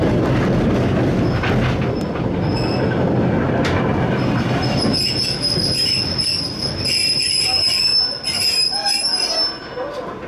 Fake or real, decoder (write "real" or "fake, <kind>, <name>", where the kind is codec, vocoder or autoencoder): real